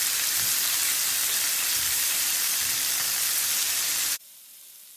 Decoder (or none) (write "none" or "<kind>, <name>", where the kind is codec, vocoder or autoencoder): none